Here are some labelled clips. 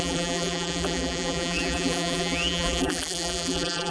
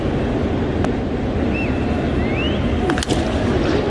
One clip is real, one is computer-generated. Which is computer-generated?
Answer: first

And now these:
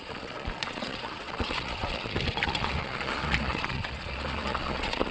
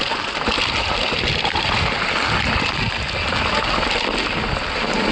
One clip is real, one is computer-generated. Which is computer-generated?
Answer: first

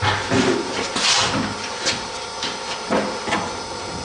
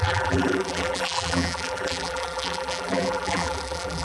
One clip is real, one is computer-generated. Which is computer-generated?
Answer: second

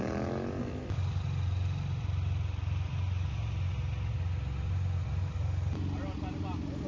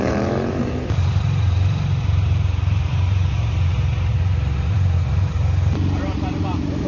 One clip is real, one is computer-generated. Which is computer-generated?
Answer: second